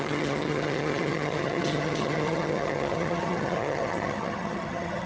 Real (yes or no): no